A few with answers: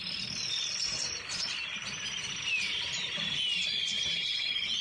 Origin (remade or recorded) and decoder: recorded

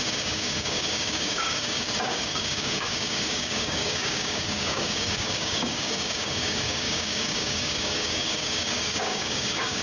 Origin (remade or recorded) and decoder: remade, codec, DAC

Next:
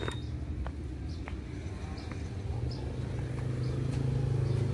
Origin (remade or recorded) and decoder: recorded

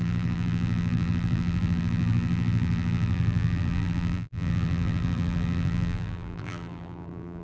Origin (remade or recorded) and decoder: remade, vocoder, BigVGAN v2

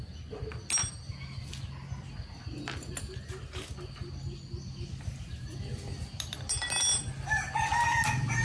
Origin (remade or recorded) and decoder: recorded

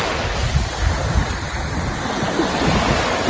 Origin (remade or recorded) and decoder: recorded